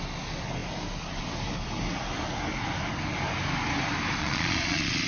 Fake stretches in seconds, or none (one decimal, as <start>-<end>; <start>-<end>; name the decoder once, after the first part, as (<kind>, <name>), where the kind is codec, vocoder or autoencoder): 4.2-5.1 (vocoder, Vocos)